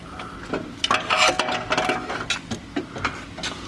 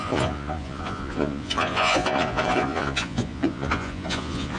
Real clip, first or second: first